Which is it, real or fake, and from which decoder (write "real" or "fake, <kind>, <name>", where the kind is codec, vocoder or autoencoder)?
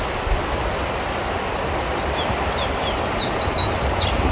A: real